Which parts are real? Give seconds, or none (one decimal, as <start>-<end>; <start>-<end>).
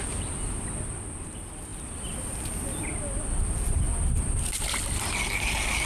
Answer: 0.0-5.9